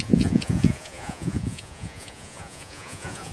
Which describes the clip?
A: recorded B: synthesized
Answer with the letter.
B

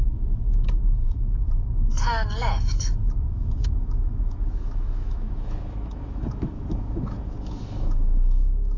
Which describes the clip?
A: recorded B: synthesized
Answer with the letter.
B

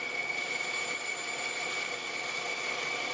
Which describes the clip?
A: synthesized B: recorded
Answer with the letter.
B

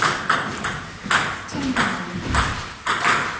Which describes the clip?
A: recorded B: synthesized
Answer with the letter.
A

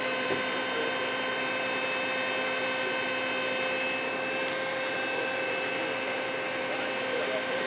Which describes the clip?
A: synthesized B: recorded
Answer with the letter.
B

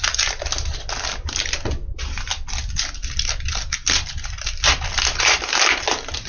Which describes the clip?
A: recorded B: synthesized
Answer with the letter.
A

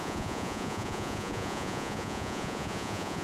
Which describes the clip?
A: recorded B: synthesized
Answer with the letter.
B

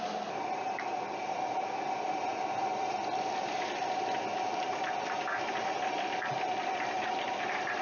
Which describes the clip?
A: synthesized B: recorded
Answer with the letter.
B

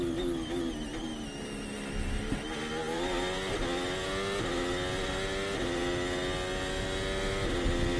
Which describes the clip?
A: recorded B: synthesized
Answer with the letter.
A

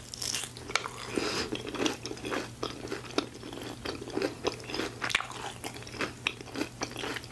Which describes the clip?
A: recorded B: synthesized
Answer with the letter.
A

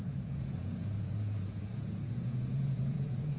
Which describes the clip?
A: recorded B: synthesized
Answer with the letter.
B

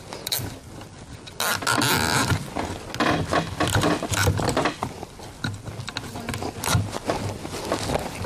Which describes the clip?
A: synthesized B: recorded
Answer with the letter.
B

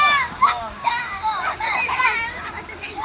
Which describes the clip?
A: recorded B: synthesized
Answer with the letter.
B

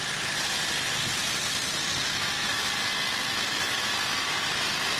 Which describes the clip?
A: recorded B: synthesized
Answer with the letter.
A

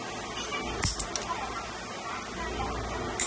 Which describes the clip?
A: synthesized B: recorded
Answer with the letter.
B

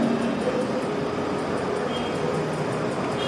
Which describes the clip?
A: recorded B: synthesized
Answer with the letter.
A